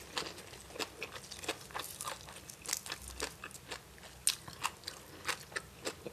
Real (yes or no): yes